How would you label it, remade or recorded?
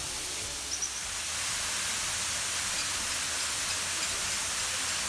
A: recorded